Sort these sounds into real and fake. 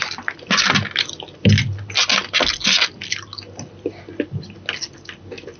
real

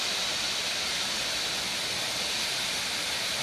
real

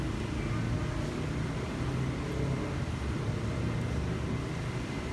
real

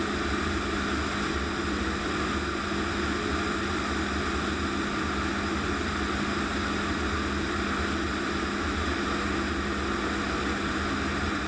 real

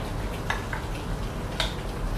real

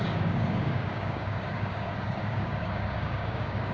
fake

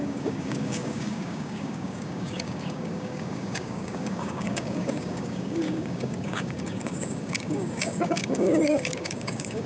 fake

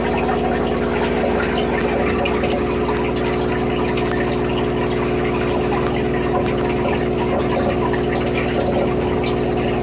real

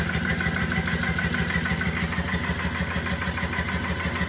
real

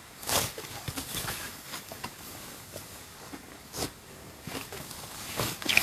fake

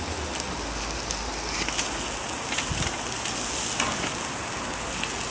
real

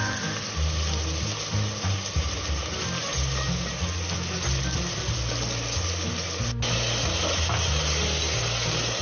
real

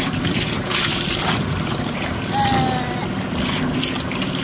real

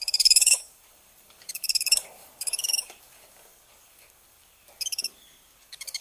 fake